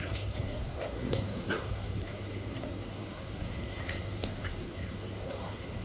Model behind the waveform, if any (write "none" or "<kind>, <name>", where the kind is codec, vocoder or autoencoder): codec, SNAC